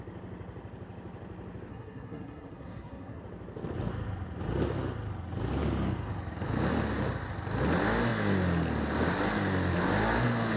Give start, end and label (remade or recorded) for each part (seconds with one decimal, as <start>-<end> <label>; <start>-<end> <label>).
0.0-1.7 recorded; 1.7-3.2 remade; 3.2-10.6 recorded